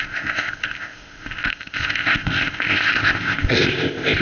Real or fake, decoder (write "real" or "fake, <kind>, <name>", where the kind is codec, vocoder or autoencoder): fake, codec, ZipCodec